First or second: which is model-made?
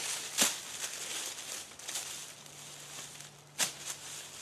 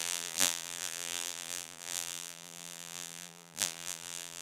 second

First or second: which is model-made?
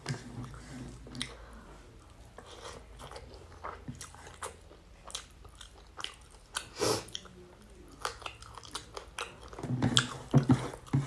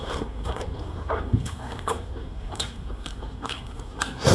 second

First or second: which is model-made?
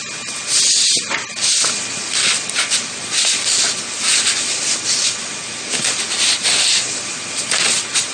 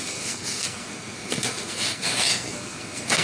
second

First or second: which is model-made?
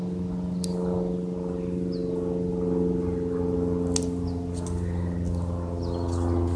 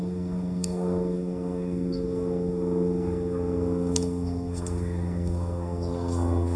second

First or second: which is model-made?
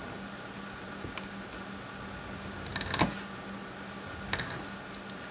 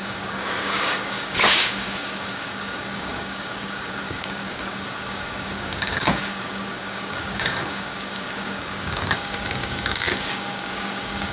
second